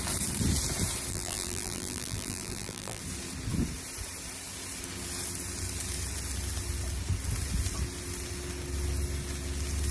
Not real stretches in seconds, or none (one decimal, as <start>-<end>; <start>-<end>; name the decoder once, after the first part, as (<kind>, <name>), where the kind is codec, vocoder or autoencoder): 1.1-3.0 (vocoder, BigVGAN v2)